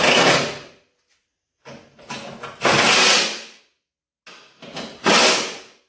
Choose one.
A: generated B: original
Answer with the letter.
B